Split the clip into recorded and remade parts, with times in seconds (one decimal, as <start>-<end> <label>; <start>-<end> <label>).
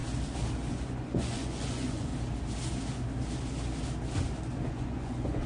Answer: 0.0-0.7 recorded; 0.7-2.1 remade; 2.1-4.7 recorded; 4.7-5.5 remade